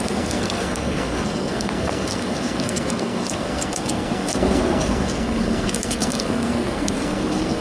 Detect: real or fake fake